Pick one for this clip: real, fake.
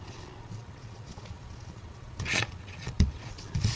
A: fake